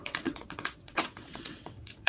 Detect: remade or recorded remade